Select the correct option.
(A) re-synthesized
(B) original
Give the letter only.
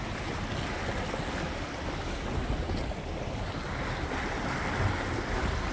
B